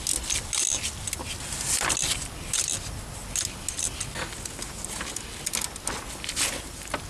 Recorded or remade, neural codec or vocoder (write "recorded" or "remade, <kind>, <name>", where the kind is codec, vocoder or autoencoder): recorded